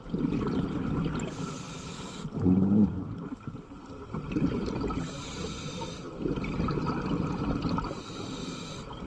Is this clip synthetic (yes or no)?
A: no